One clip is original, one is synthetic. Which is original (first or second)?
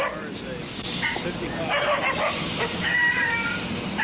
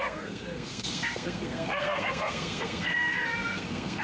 first